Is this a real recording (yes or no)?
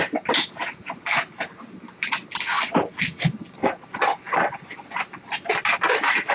yes